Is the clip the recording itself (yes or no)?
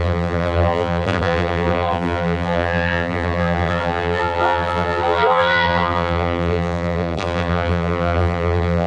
no